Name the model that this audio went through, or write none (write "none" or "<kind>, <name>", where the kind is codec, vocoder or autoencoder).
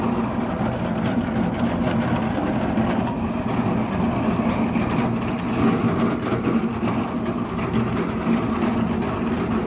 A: none